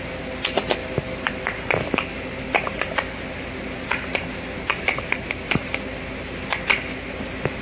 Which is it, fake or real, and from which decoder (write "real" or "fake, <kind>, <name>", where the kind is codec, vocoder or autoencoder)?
real